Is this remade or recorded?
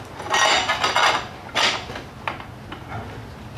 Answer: recorded